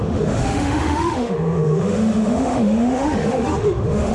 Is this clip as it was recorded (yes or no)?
no